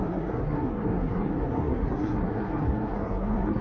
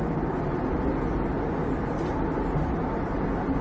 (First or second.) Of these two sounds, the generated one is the first